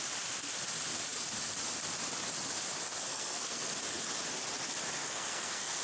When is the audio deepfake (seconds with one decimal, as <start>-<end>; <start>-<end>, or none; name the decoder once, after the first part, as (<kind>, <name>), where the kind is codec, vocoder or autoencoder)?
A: 3.1-3.7 (codec, SNAC); 5.0-5.8